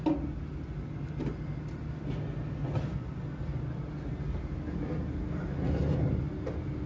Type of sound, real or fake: real